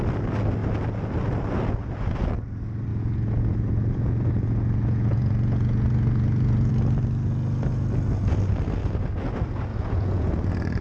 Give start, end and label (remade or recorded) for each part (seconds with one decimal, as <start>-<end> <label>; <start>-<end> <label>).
0.0-2.9 recorded; 2.9-6.7 remade; 6.7-9.7 recorded; 9.7-10.3 remade; 10.3-10.8 recorded